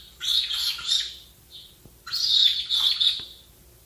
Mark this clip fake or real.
real